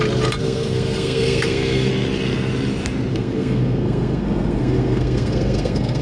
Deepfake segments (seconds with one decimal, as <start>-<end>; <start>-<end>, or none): 0.4-1.9; 3.1-6.0